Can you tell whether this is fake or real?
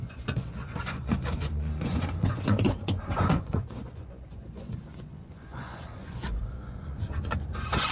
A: fake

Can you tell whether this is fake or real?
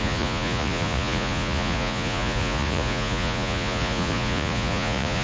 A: fake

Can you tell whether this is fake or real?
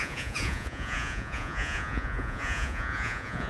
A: fake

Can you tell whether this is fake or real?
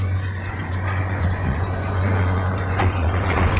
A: fake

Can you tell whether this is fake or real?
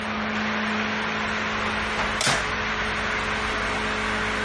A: real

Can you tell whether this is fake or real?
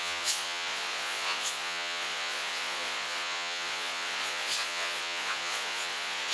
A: fake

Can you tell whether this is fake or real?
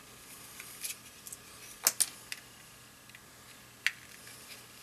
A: real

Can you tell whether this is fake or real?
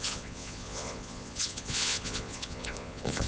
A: fake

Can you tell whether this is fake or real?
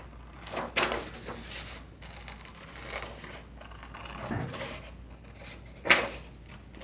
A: real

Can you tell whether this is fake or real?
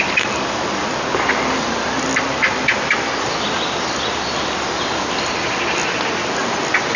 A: real